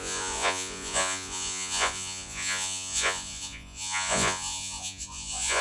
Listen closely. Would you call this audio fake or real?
fake